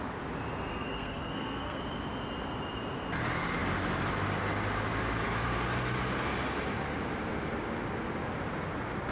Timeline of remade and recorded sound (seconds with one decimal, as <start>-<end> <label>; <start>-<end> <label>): 0.0-0.7 recorded; 0.7-1.8 remade; 1.8-9.1 recorded